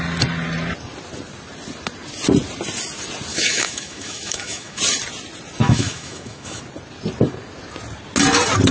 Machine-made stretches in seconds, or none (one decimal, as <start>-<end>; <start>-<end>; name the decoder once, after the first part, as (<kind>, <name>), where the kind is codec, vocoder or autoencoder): 3.3-4.8 (autoencoder, DAC-VAE); 5.6-6.6